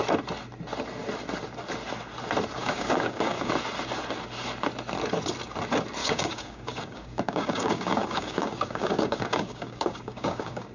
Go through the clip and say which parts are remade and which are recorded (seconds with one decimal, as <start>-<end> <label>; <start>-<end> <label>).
0.0-2.6 recorded; 2.6-3.5 remade; 3.5-6.0 recorded; 6.0-10.7 remade